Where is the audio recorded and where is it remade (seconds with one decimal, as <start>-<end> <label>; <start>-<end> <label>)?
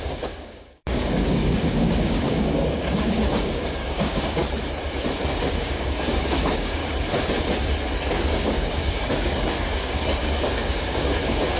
0.0-4.4 remade; 4.4-5.6 recorded; 5.6-6.8 remade; 6.8-8.1 recorded; 8.1-11.6 remade